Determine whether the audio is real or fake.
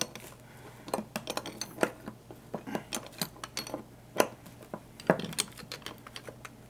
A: real